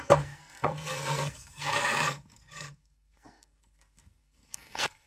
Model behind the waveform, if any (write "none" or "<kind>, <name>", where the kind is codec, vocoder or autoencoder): codec, SNAC